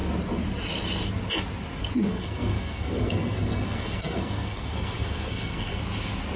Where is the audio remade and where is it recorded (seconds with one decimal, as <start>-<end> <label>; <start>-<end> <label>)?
0.0-2.1 recorded; 2.1-5.8 remade; 5.8-6.4 recorded

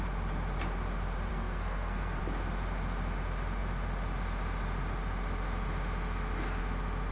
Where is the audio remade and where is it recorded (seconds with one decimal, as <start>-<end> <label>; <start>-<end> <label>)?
0.0-1.3 recorded; 1.3-2.2 remade; 2.2-7.1 recorded

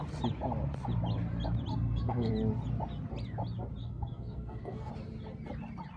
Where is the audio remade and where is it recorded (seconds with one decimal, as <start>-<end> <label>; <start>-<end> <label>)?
0.0-1.7 recorded; 1.7-2.3 remade; 2.3-3.8 recorded; 3.8-4.9 remade; 4.9-6.0 recorded

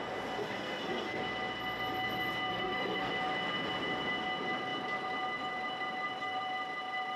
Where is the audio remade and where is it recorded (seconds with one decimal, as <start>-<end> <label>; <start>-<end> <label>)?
0.0-0.4 recorded; 0.4-1.2 remade; 1.2-2.5 recorded; 2.5-3.1 remade; 3.1-7.2 recorded

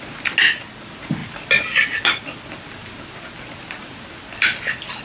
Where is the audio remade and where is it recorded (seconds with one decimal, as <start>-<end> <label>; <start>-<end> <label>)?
0.0-5.0 recorded

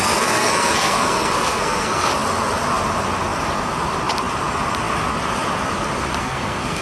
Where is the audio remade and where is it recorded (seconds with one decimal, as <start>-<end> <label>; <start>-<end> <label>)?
0.0-2.1 remade; 2.1-6.2 recorded; 6.2-6.8 remade

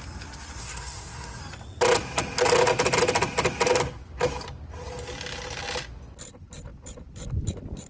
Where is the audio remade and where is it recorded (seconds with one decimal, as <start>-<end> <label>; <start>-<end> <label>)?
0.0-0.6 recorded; 0.6-1.4 remade; 1.4-7.9 recorded

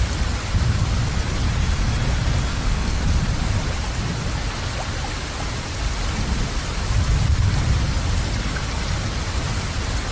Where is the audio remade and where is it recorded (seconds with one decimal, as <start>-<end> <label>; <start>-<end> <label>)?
0.0-2.5 recorded; 2.5-3.0 remade; 3.0-10.1 recorded